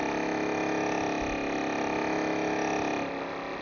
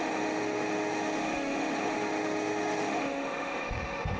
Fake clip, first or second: second